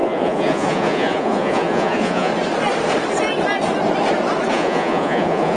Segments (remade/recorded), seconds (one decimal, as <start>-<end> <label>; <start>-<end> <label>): 0.0-2.3 remade; 2.3-4.5 recorded; 4.5-5.6 remade

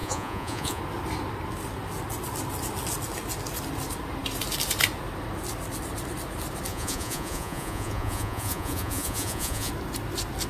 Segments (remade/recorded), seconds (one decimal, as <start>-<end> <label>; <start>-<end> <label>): 0.0-0.8 remade; 0.8-6.7 recorded; 6.7-9.7 remade; 9.7-10.5 recorded

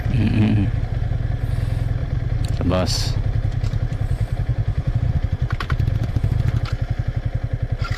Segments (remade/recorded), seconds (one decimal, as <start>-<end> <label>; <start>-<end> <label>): 0.0-2.0 recorded; 2.0-6.1 remade; 6.1-8.0 recorded

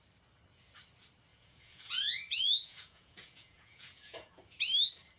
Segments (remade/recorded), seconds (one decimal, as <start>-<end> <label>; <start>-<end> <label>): 0.0-1.3 recorded; 1.3-4.4 remade; 4.4-5.2 recorded

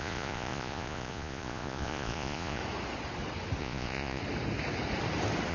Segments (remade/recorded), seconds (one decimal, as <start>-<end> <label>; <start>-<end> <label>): 0.0-2.6 remade; 2.6-3.6 recorded; 3.6-4.2 remade; 4.2-5.5 recorded